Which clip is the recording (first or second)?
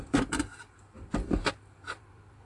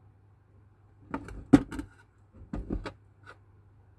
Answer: second